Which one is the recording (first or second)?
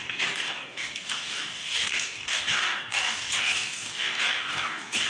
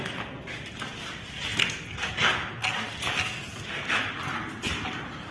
second